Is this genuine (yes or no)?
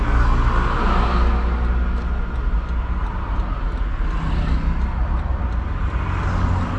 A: yes